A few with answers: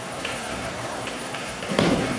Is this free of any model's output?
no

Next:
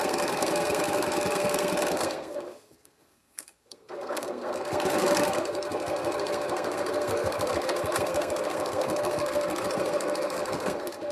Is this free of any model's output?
no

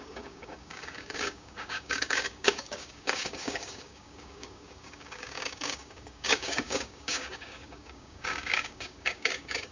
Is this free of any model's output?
no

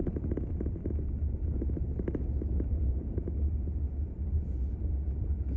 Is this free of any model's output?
yes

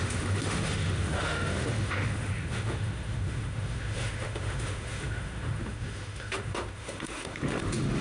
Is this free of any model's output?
no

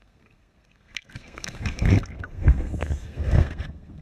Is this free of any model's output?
no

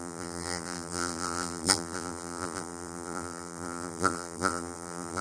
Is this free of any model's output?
no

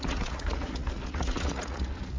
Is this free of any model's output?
no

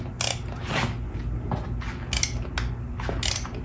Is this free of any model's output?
yes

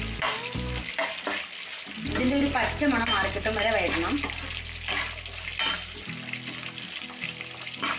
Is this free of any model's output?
no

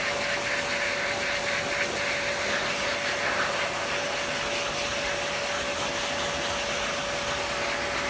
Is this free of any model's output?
yes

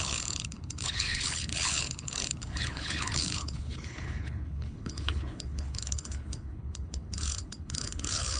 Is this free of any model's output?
no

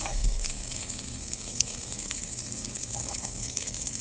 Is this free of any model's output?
no